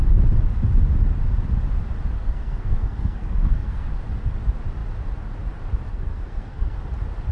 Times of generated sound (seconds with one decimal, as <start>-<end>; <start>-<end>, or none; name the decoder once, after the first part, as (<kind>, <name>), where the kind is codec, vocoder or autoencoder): 2.2-3.9 (codec, SNAC); 5.9-6.8